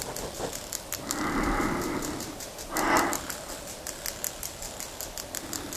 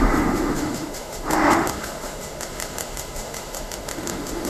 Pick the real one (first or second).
first